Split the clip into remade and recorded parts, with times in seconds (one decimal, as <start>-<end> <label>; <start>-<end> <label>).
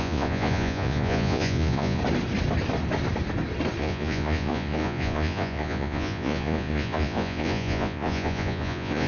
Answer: 0.0-2.0 remade; 2.0-3.8 recorded; 3.8-9.1 remade